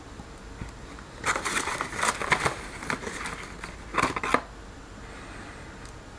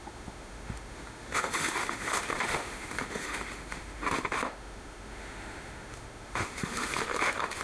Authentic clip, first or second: first